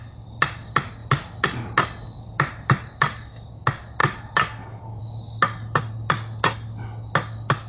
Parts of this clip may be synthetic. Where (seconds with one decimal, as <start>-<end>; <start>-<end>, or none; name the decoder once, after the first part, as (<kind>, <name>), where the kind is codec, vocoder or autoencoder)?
none